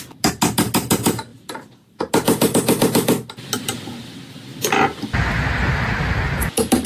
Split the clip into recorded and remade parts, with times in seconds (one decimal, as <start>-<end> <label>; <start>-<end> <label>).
0.0-6.9 recorded